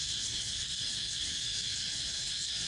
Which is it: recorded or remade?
remade